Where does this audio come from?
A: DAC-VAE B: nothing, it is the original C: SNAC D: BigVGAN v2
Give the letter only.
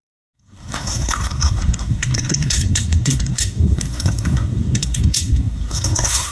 C